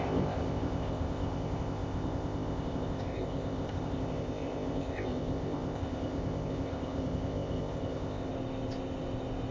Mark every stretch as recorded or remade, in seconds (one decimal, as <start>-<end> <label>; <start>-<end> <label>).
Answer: 0.0-8.3 remade; 8.3-9.5 recorded